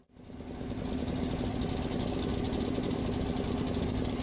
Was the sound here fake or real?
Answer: real